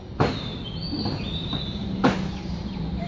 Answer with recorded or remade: recorded